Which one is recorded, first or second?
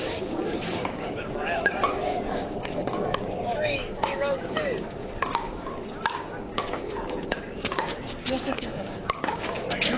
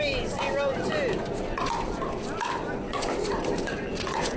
second